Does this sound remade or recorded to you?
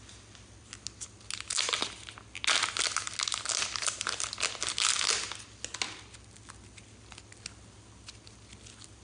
recorded